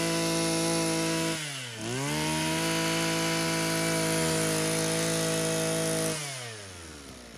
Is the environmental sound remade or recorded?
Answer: recorded